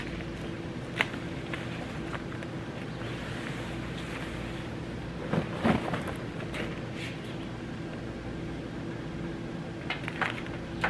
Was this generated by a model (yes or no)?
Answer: no